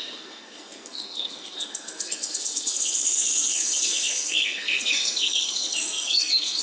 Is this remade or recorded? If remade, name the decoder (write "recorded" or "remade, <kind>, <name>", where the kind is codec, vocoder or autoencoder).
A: remade, codec, SNAC